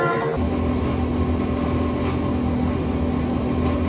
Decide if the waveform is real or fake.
real